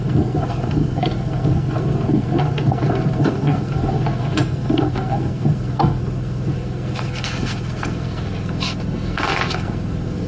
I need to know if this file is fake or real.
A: fake